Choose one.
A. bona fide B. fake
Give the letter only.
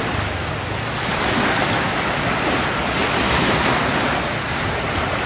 A